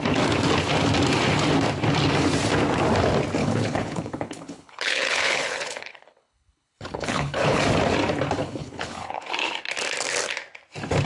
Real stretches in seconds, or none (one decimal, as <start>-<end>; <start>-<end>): 0.0-3.4; 7.6-8.4; 9.3-11.1